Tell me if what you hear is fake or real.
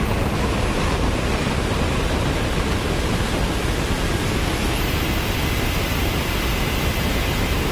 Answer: real